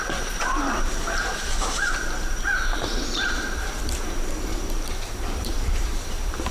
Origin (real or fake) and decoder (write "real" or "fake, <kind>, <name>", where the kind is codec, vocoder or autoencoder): fake, vocoder, BigVGAN v2